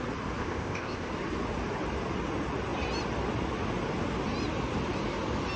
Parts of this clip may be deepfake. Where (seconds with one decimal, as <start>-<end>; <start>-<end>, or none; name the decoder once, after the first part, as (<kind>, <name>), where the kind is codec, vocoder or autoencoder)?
0.4-1.1 (codec, ZipCodec)